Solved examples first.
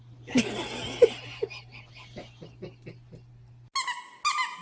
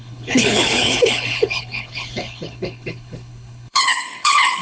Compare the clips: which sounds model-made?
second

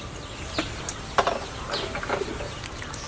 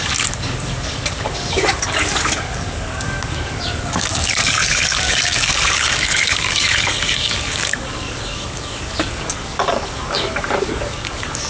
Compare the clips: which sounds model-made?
second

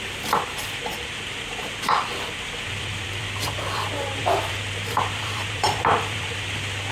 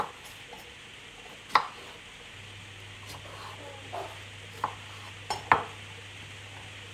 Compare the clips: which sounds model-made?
first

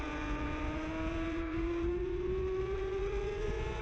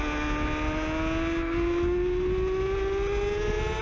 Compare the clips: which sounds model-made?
first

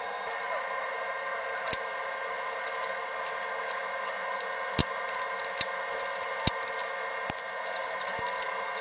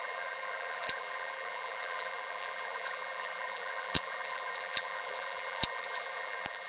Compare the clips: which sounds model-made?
second